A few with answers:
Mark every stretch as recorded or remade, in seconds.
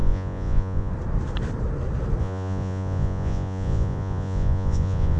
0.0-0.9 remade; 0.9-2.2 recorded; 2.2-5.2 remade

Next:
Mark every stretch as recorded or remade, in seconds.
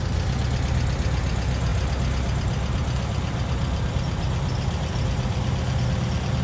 0.0-6.4 recorded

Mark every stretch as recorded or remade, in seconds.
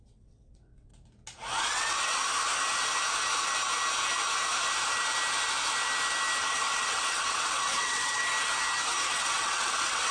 0.0-0.9 remade; 0.9-1.6 recorded; 1.6-2.2 remade; 2.2-6.4 recorded; 6.4-8.2 remade; 8.2-9.1 recorded; 9.1-10.1 remade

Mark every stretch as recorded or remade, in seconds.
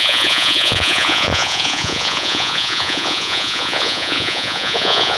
0.0-5.2 remade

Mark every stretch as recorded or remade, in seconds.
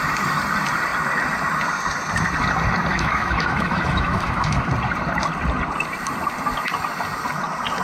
0.0-2.9 recorded; 2.9-4.7 remade; 4.7-7.8 recorded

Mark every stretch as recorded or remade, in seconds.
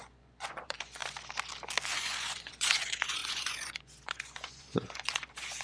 0.0-1.0 remade; 1.0-1.9 recorded; 1.9-5.6 remade